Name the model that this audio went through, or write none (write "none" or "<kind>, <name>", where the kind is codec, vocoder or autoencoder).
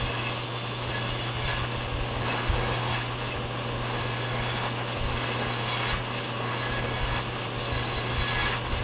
none